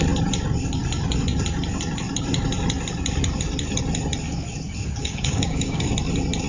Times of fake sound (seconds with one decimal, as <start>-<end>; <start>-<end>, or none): 5.0-5.9